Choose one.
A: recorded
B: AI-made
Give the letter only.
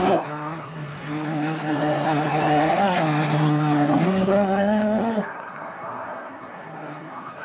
B